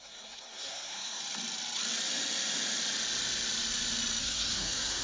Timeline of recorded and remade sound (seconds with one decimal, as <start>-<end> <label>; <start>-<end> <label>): 0.0-1.2 remade; 1.2-4.2 recorded; 4.2-5.0 remade